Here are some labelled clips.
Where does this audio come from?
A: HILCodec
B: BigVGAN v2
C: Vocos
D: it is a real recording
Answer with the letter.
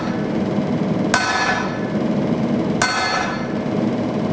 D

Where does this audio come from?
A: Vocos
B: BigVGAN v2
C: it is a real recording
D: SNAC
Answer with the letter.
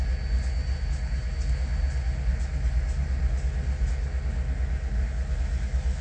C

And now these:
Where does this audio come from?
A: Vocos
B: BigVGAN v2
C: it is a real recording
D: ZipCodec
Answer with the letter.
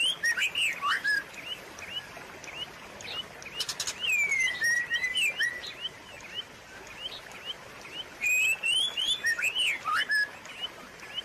C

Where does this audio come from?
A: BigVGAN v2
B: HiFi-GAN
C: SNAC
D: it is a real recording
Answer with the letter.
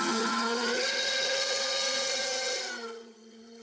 B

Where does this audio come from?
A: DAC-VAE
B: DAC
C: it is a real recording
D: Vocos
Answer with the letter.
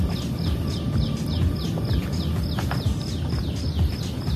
C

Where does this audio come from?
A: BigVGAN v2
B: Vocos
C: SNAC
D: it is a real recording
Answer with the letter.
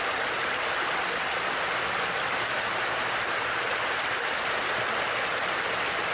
D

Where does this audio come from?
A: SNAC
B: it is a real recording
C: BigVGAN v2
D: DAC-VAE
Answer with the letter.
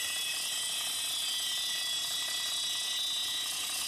B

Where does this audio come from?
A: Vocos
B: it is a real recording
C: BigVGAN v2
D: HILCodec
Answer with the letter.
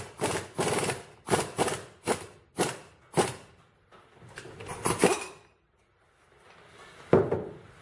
B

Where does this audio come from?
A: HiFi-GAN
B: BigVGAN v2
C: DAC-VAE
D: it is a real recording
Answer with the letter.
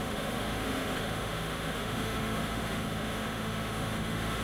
C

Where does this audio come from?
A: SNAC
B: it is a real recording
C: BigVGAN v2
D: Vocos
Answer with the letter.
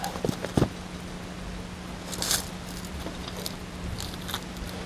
B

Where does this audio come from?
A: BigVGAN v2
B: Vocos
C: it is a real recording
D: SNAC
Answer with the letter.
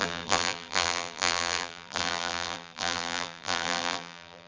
A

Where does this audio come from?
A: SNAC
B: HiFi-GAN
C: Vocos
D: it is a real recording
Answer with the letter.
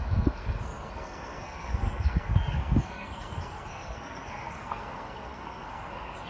A